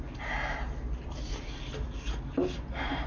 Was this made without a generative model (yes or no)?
yes